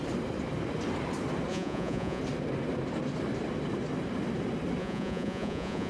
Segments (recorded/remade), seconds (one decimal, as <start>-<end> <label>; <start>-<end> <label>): 0.0-1.5 recorded; 1.5-2.2 remade; 2.2-4.8 recorded; 4.8-5.9 remade